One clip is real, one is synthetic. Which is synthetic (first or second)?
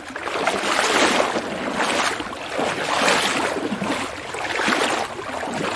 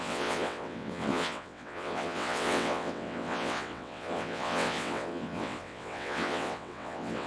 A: second